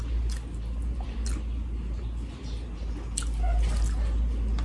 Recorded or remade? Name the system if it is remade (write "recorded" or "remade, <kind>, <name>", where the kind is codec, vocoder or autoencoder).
recorded